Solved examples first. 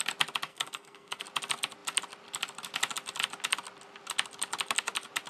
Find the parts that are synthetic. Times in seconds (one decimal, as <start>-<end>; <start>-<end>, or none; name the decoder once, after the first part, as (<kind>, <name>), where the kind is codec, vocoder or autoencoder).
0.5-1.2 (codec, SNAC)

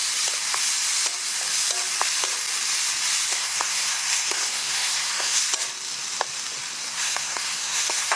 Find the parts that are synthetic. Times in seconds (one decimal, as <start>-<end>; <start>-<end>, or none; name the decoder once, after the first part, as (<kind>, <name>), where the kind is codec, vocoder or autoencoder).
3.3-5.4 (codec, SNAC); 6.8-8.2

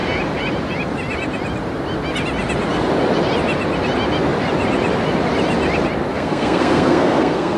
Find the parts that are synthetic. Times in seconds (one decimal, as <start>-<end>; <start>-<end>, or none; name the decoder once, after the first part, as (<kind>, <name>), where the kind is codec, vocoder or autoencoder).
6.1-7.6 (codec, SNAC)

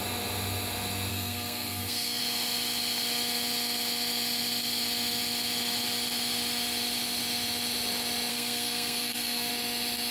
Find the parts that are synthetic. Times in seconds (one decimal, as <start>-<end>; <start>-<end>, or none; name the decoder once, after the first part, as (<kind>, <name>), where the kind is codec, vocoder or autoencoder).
1.1-2.2 (codec, SNAC); 8.3-9.5

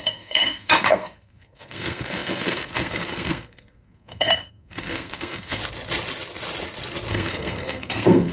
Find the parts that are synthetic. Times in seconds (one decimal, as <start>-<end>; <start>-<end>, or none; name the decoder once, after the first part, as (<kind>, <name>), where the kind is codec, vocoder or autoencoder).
0.0-5.6 (codec, SNAC); 7.1-8.3

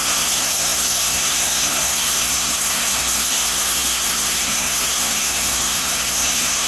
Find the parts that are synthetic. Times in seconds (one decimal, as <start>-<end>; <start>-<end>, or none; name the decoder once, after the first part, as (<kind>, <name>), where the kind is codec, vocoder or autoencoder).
0.0-6.7 (codec, SNAC)

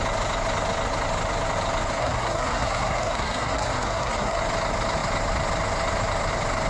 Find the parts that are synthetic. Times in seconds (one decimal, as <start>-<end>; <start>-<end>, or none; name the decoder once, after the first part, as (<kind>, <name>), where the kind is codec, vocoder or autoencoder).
2.0-4.4 (codec, SNAC)

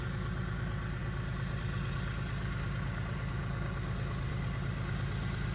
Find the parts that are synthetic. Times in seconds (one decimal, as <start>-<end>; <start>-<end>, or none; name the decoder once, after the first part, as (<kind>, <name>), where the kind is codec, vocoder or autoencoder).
none